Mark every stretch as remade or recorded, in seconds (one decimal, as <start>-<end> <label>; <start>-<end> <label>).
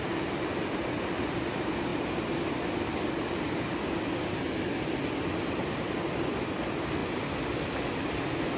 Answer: 0.0-8.6 recorded